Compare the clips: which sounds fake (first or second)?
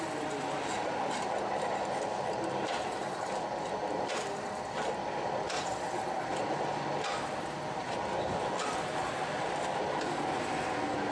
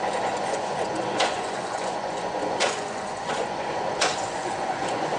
second